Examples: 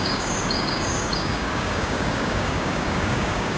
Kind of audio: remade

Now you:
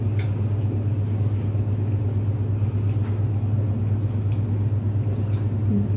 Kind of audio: recorded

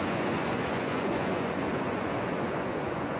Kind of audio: remade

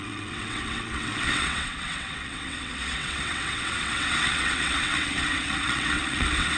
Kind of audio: remade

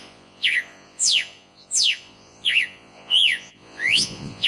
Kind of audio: remade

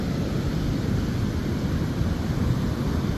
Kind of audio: recorded